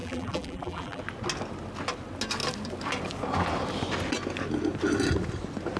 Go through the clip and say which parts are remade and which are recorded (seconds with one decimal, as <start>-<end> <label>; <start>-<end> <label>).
0.0-1.0 remade; 1.0-5.8 recorded